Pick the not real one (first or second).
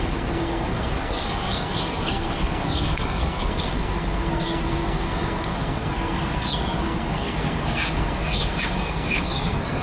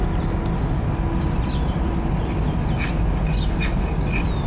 first